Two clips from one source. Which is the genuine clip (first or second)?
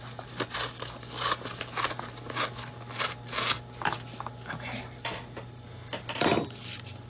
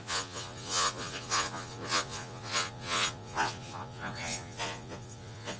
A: first